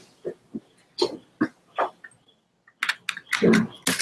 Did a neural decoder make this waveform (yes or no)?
no